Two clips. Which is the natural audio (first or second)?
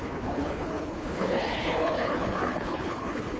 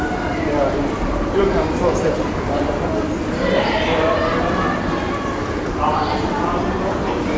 second